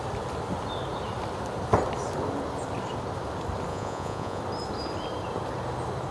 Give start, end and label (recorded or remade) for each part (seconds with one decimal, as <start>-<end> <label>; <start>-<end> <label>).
0.0-3.7 recorded; 3.7-4.4 remade; 4.4-6.1 recorded